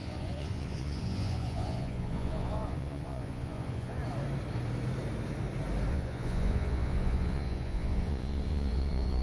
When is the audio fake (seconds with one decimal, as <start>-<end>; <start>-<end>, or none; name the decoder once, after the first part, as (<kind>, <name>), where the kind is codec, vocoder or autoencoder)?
0.0-4.0 (vocoder, Vocos); 5.9-9.2